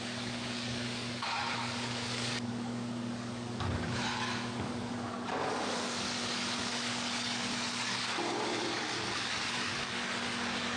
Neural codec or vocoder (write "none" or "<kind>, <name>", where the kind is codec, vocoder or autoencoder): codec, DAC